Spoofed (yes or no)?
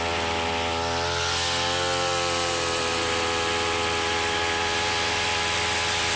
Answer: no